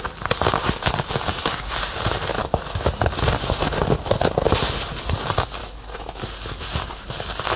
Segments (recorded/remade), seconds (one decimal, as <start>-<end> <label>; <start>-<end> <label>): 0.0-2.4 recorded; 2.4-3.0 remade; 3.0-5.6 recorded; 5.6-6.2 remade; 6.2-7.6 recorded